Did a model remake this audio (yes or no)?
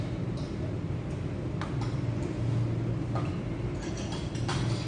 no